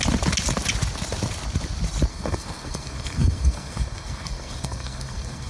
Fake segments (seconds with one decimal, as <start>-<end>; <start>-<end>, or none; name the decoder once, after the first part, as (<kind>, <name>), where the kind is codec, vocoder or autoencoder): 2.1-5.5 (codec, SNAC)